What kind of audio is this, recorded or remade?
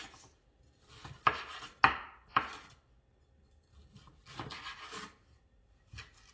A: recorded